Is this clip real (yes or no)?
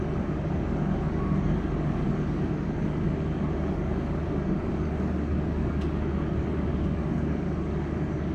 no